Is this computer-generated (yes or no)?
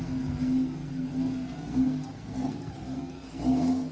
yes